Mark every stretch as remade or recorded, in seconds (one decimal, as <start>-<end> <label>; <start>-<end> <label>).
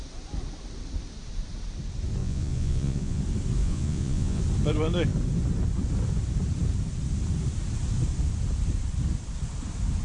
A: 0.0-2.2 recorded; 2.2-3.2 remade; 3.2-3.6 recorded; 3.6-4.4 remade; 4.4-10.0 recorded